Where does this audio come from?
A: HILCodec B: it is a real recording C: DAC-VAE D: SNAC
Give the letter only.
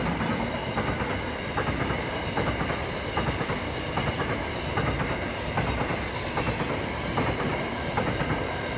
B